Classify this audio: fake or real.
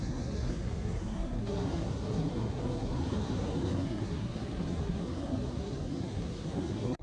fake